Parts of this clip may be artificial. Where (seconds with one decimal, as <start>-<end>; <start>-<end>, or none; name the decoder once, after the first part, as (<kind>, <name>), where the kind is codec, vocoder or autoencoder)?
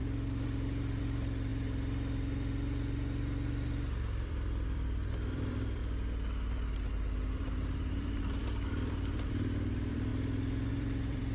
1.0-5.8 (vocoder, BigVGAN v2); 6.9-11.3